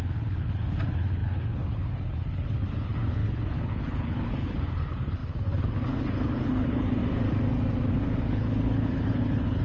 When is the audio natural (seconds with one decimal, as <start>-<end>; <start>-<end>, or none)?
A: 7.0-7.9